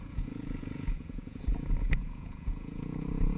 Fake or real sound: fake